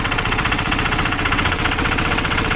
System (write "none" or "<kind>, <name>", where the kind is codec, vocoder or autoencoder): vocoder, WaveNeXt